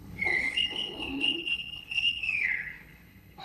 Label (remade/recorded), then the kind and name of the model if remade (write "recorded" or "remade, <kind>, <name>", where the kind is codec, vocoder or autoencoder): remade, codec, HILCodec